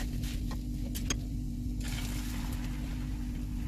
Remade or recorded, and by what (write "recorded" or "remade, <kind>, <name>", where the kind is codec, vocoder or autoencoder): recorded